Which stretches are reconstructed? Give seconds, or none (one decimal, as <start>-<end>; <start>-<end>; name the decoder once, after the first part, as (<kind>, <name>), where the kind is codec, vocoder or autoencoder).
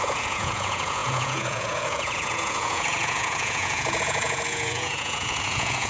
0.0-5.9 (vocoder, Vocos)